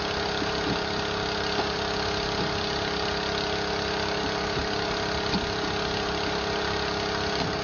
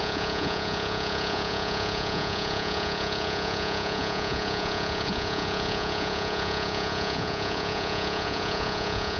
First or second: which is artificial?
second